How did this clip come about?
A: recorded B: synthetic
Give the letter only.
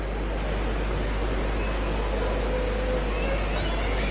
A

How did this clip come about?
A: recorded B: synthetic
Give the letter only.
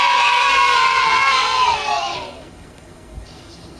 B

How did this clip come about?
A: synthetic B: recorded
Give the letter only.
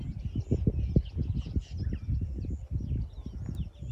B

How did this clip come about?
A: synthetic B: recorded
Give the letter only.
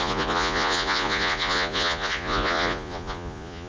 A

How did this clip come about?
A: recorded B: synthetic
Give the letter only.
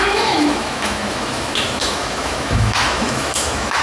B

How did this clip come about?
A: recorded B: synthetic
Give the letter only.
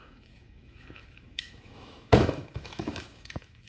B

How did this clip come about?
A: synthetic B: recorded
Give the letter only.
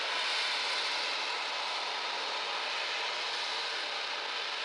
B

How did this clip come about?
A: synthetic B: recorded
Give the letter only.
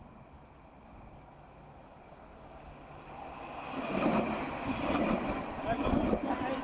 B